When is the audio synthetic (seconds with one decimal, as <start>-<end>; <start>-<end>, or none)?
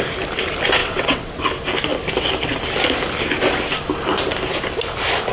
0.8-1.4